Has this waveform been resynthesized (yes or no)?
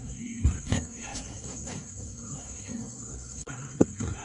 yes